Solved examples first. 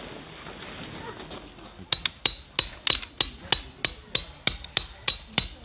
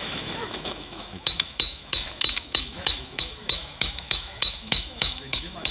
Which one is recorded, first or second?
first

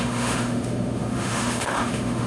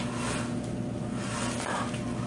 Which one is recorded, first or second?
second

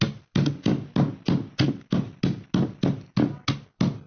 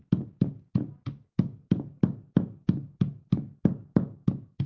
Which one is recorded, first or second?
first